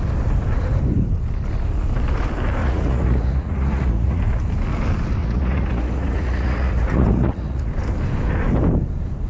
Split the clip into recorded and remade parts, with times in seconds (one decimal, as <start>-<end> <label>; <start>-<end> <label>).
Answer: 0.0-2.6 recorded; 2.6-4.2 remade; 4.2-5.2 recorded; 5.2-7.7 remade; 7.7-9.3 recorded